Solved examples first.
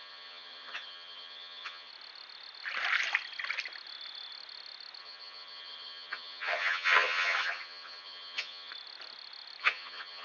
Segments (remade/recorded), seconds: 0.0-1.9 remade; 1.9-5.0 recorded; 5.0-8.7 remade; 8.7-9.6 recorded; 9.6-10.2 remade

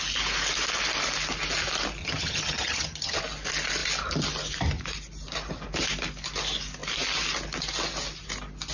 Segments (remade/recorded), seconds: 0.0-2.0 recorded; 2.0-3.2 remade; 3.2-8.7 recorded

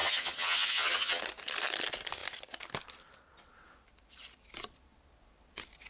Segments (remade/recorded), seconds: 0.0-1.2 remade; 1.2-5.9 recorded